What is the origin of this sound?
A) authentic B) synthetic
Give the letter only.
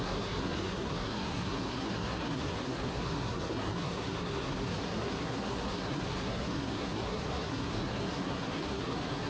B